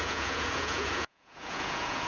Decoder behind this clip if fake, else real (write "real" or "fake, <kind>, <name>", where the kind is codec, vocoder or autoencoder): fake, vocoder, Vocos